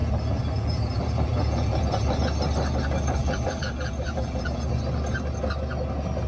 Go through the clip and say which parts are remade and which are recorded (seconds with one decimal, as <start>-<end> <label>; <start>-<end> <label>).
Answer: 0.0-2.2 remade; 2.2-3.2 recorded; 3.2-4.7 remade; 4.7-6.3 recorded